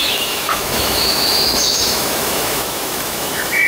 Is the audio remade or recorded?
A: remade